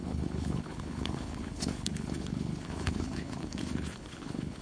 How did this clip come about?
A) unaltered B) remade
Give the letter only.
B